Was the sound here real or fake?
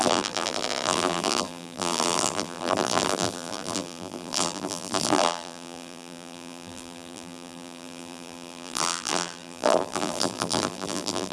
fake